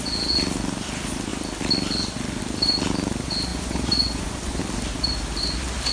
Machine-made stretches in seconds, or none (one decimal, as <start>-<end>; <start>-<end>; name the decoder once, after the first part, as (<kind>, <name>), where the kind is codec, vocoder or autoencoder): 3.5-4.6 (vocoder, Vocos)